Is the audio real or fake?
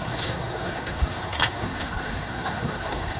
fake